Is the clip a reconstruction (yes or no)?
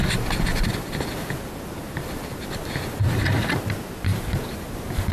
no